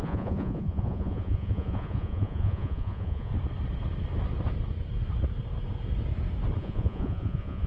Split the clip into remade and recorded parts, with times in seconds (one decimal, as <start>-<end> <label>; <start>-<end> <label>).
0.0-3.3 remade; 3.3-6.6 recorded; 6.6-7.7 remade